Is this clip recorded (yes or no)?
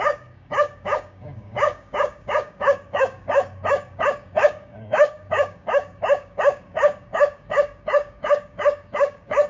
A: no